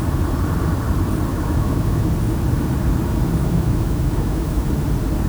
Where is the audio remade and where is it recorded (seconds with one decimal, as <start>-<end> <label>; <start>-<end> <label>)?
0.0-1.3 recorded; 1.3-2.1 remade; 2.1-3.4 recorded; 3.4-4.7 remade; 4.7-5.3 recorded